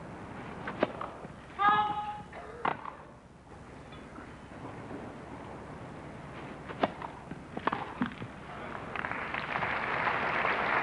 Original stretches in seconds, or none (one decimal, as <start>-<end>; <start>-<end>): 0.0-10.8